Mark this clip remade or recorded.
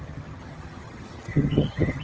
remade